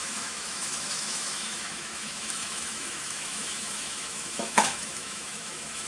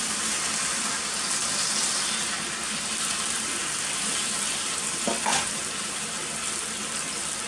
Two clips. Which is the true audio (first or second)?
second